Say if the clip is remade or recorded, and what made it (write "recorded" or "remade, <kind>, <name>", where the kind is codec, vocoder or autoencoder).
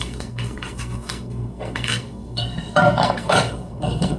remade, codec, SNAC